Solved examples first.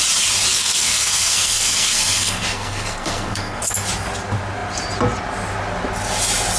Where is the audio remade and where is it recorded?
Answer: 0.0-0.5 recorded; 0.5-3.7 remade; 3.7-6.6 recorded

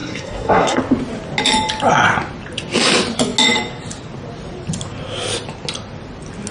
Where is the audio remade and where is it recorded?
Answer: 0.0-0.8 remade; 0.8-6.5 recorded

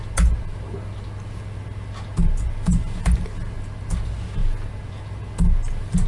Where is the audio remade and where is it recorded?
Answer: 0.0-6.1 recorded

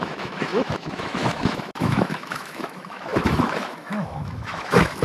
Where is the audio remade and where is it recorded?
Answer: 0.0-5.0 remade

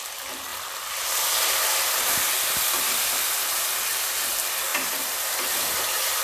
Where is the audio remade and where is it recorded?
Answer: 0.0-0.5 recorded; 0.5-4.2 remade; 4.2-4.7 recorded; 4.7-6.2 remade

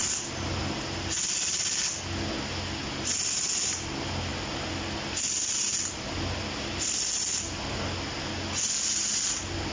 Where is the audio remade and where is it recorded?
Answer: 0.0-9.7 recorded

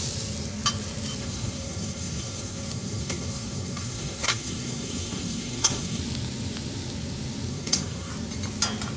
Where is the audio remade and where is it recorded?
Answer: 0.0-1.2 recorded; 1.2-6.0 remade; 6.0-7.5 recorded; 7.5-8.1 remade; 8.1-9.0 recorded

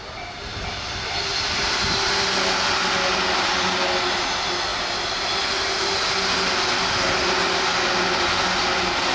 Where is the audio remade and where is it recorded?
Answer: 0.0-0.5 recorded; 0.5-2.1 remade; 2.1-4.7 recorded; 4.7-5.3 remade; 5.3-9.1 recorded